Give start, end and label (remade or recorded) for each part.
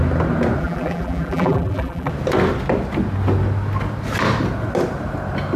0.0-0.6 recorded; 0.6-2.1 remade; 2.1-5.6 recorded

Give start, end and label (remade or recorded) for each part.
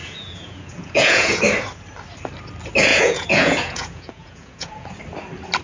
0.0-1.4 remade; 1.4-2.9 recorded; 2.9-4.9 remade; 4.9-5.6 recorded